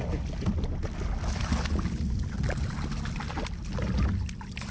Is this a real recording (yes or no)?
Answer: yes